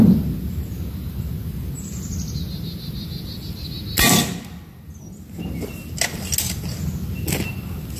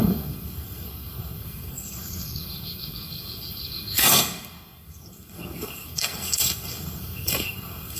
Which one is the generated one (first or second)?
second